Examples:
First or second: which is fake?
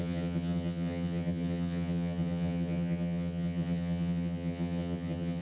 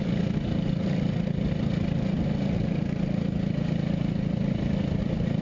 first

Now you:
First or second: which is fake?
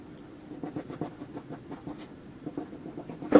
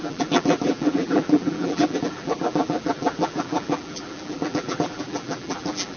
second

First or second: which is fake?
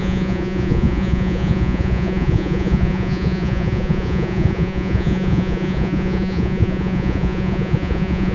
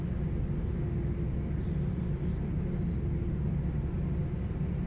first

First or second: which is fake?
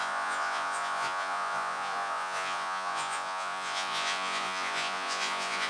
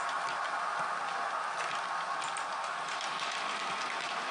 first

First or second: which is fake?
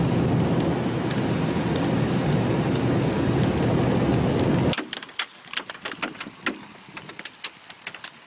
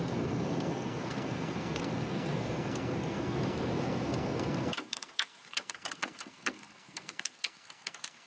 second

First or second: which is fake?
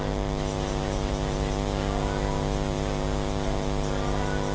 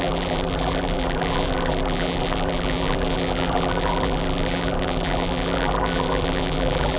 second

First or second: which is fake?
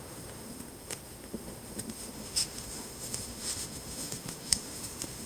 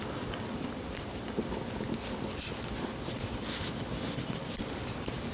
first